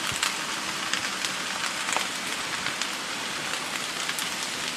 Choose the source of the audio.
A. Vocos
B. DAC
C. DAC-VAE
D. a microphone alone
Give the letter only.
D